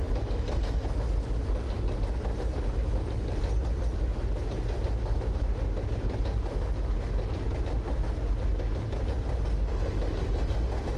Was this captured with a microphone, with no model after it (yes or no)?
yes